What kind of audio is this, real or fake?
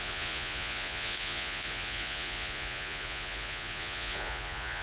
fake